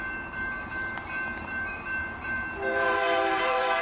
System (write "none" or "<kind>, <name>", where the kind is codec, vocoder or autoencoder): vocoder, BigVGAN v2